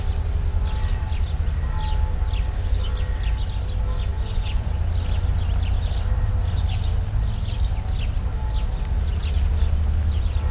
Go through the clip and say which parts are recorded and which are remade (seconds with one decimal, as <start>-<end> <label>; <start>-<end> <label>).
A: 0.0-4.1 recorded; 4.1-4.7 remade; 4.7-10.5 recorded